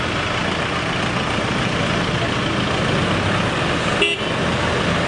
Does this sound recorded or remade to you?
recorded